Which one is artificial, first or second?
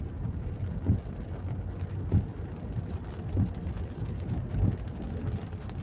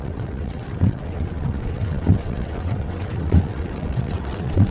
second